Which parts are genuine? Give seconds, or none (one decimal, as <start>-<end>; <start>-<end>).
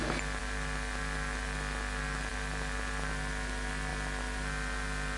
0.0-5.2